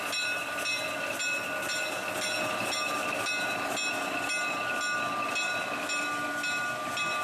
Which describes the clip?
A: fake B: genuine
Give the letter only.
B